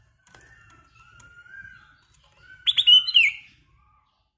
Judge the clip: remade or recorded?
recorded